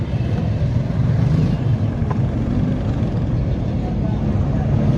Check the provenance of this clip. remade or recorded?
recorded